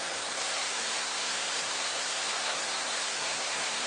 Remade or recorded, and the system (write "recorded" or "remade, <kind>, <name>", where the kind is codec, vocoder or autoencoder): remade, codec, SNAC